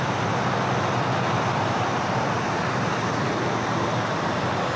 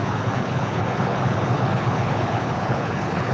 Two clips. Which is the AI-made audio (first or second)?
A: second